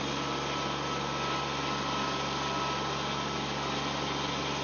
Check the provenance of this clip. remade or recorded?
recorded